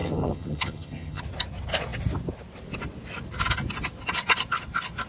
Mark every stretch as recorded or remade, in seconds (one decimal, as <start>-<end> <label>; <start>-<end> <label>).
0.0-1.2 remade; 1.2-5.1 recorded